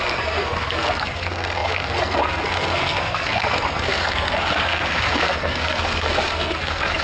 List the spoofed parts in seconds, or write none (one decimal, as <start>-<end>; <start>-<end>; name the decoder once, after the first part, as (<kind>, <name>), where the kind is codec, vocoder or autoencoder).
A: 0.0-7.0 (codec, SNAC)